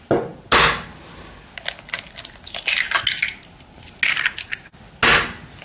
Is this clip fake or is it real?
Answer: real